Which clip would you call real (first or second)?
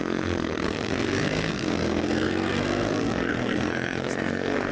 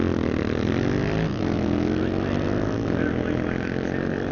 second